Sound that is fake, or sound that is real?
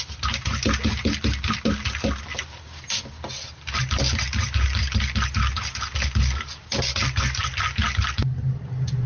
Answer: real